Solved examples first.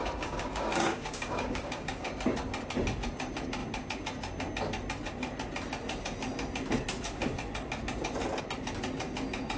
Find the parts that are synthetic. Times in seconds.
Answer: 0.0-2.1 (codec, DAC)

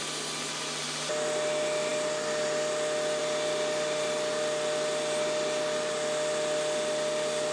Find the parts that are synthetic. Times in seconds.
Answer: none

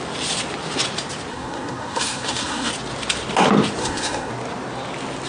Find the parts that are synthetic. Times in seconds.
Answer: 1.3-2.7 (codec, SNAC); 3.8-4.3